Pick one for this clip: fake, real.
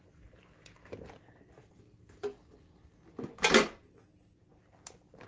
real